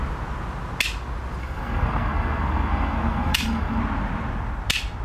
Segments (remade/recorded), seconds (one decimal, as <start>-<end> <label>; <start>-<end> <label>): 0.0-1.4 recorded; 1.4-3.8 remade; 3.8-5.0 recorded